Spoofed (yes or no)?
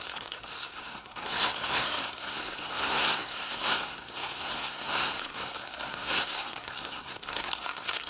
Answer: yes